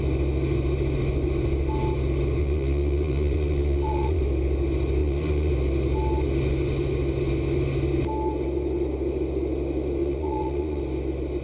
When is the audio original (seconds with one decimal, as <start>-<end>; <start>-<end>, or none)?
0.0-2.4; 4.2-5.0; 5.5-10.0; 10.8-11.4